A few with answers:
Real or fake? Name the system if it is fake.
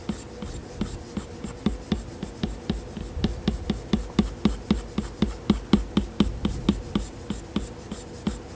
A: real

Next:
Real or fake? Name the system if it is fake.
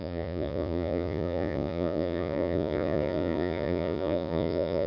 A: fake, vocoder, Vocos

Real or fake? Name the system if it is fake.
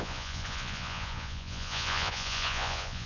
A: fake, vocoder, Vocos